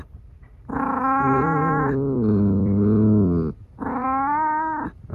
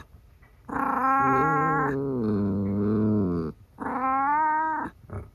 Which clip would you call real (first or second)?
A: second